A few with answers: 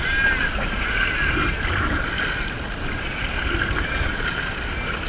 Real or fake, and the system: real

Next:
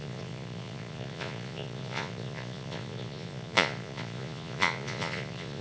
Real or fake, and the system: fake, vocoder, Vocos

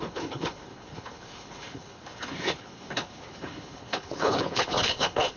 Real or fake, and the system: fake, codec, HILCodec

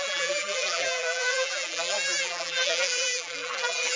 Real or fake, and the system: fake, vocoder, BigVGAN v2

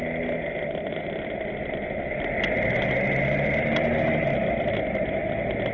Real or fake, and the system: real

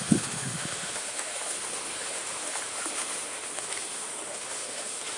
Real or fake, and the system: fake, autoencoder, DAC-VAE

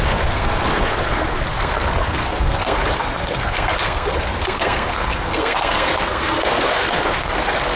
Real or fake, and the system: fake, codec, SNAC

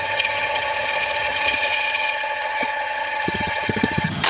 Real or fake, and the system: fake, vocoder, HiFi-GAN